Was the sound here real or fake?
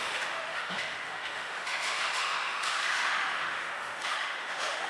fake